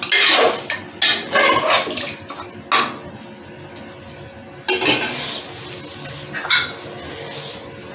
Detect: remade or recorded recorded